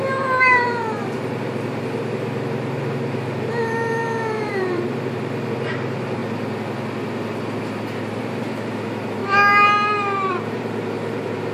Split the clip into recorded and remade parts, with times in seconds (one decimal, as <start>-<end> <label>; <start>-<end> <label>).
0.0-6.2 remade; 6.2-8.2 recorded; 8.2-9.2 remade; 9.2-10.3 recorded; 10.3-11.5 remade